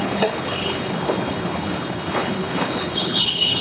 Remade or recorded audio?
remade